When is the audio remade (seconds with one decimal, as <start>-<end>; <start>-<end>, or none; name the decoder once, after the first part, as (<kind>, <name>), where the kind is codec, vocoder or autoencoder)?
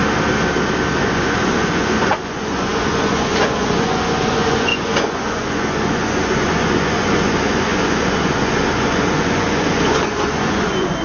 1.0-11.0 (vocoder, Vocos)